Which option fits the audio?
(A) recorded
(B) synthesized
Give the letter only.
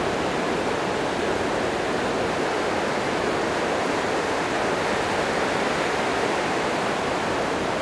A